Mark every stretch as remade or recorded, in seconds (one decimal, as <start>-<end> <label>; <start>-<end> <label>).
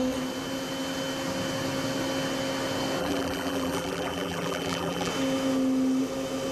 0.0-3.0 recorded; 3.0-5.1 remade; 5.1-6.5 recorded